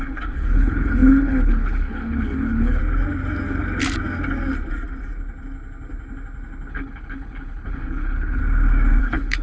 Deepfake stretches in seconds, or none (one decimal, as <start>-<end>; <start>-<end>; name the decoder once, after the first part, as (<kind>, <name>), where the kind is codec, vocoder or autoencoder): 0.0-2.8 (codec, HILCodec); 6.7-8.4; 9.0-9.4